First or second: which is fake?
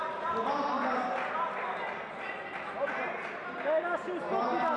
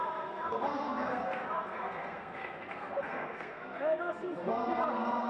second